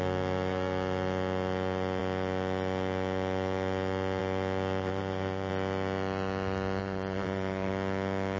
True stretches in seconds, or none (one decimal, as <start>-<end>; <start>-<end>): 0.0-4.8; 5.5-6.8; 7.7-8.4